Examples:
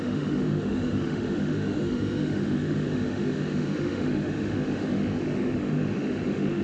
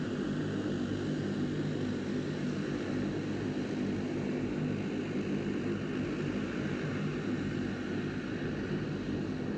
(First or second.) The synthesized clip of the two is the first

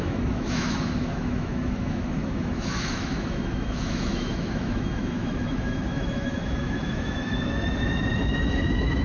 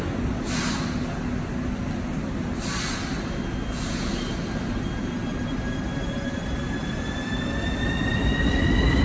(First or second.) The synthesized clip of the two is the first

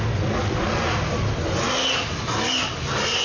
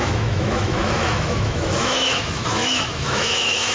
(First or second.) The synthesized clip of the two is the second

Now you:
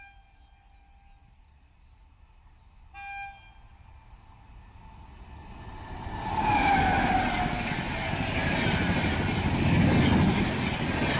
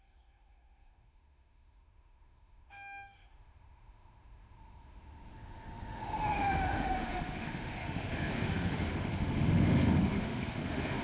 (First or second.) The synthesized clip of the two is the second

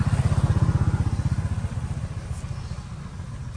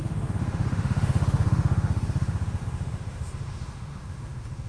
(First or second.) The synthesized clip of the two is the second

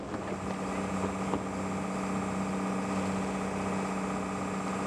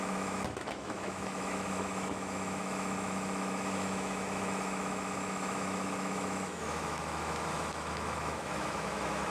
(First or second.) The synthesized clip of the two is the second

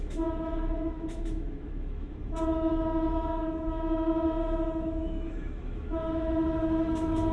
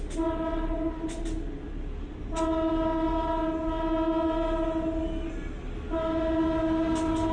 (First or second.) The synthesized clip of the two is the first